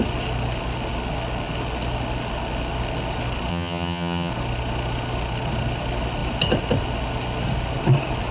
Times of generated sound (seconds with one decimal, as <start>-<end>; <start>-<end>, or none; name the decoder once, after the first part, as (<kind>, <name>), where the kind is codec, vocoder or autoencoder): 3.5-4.3 (vocoder, HiFi-GAN)